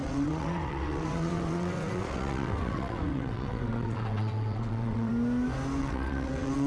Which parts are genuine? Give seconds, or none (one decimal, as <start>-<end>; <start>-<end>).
5.1-5.8